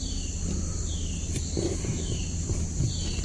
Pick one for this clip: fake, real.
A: real